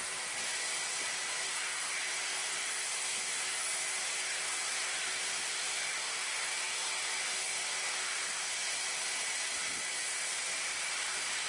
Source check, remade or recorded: recorded